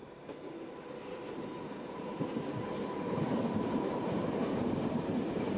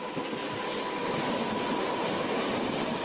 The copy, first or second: first